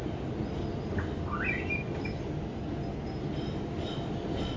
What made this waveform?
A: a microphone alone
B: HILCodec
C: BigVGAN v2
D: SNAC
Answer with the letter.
A